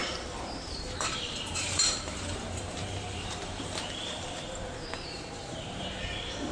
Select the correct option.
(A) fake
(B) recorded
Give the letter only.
A